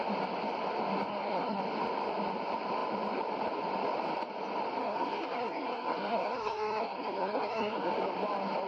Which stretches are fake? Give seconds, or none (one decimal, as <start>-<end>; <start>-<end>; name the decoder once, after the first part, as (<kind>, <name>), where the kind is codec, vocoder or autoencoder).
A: 1.1-1.6 (codec, SNAC); 4.8-7.9